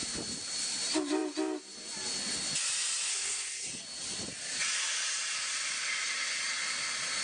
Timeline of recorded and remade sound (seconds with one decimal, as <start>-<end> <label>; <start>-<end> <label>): 0.0-3.1 recorded; 3.1-3.7 remade; 3.7-7.2 recorded

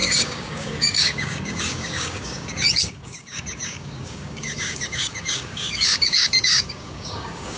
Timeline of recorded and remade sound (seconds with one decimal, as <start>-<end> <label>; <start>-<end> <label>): 0.0-7.6 remade

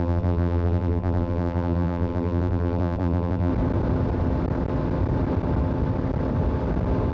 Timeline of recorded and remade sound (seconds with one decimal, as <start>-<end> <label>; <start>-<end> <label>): 0.0-3.5 remade; 3.5-7.1 recorded

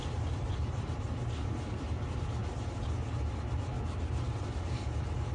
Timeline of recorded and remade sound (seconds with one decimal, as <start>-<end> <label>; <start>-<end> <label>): 0.0-0.5 remade; 0.5-5.3 recorded

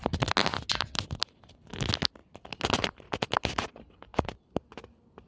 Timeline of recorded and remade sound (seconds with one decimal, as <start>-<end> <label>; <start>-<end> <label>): 0.0-5.3 recorded

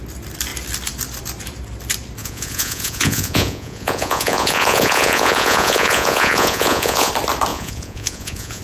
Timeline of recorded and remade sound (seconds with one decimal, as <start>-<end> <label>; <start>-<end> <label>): 0.0-2.2 recorded; 2.2-7.1 remade; 7.1-7.5 recorded; 7.5-8.6 remade